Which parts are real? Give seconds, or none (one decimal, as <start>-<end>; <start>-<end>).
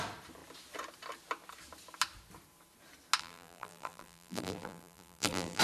0.0-3.2